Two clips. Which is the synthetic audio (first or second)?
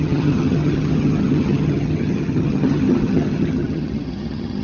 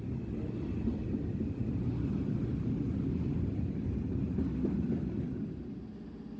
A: first